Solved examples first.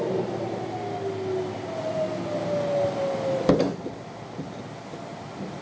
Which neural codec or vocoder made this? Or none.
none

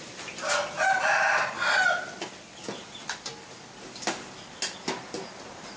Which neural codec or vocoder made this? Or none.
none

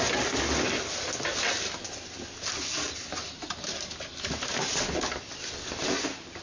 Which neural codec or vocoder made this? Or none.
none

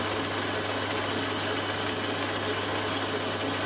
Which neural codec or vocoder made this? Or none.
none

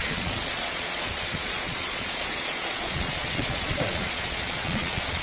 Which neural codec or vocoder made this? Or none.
vocoder, Vocos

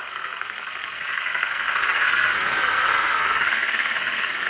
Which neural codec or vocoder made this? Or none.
codec, SNAC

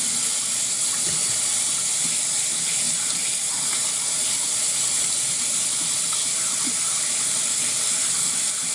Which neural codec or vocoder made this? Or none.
none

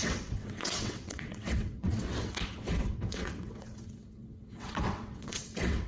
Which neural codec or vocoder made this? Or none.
vocoder, WaveNeXt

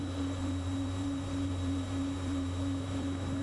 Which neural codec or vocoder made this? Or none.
vocoder, BigVGAN v2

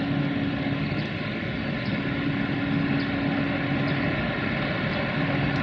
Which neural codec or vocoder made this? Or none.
none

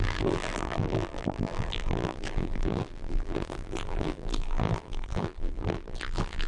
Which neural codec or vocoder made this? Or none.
vocoder, BigVGAN v2